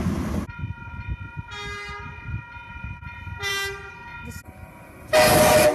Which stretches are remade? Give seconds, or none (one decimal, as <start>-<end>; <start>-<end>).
2.7-3.5